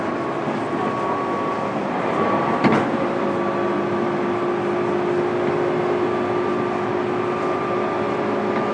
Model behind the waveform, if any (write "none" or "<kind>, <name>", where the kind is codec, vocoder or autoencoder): none